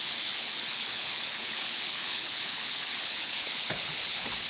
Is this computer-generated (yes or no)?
yes